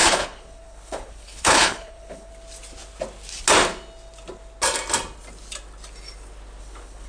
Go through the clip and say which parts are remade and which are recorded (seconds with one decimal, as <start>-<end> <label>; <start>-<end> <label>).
0.0-2.3 remade; 2.3-6.6 recorded; 6.6-7.1 remade